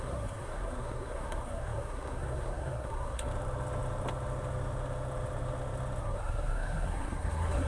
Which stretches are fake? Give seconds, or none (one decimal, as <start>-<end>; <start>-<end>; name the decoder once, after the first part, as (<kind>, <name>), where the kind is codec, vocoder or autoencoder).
0.0-3.3 (codec, SNAC); 6.0-7.7